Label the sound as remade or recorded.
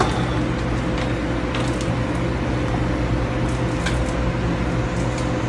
recorded